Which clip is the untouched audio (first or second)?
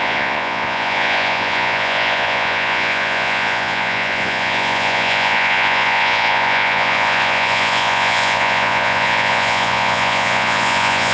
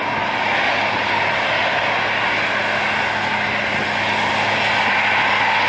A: second